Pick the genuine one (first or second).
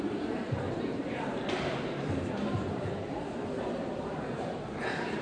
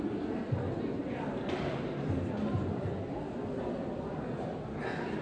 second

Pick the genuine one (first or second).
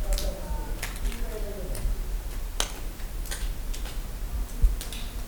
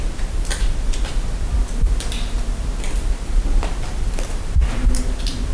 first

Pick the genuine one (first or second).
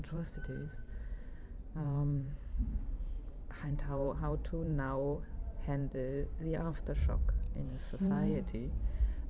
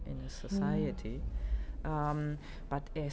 second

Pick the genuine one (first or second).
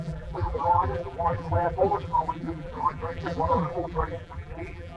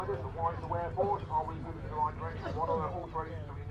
second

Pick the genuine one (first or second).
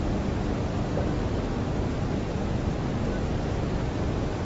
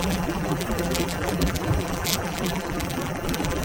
first